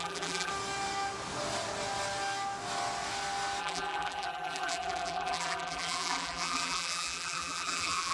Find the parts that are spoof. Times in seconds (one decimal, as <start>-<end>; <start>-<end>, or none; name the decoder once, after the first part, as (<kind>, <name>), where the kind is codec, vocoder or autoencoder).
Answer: 0.0-0.5 (vocoder, BigVGAN v2); 3.6-8.1